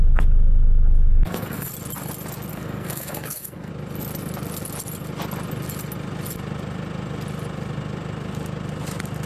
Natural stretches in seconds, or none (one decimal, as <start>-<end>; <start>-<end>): 0.0-1.1; 1.7-2.5; 3.7-9.3